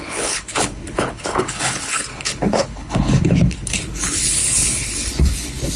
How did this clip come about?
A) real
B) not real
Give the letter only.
B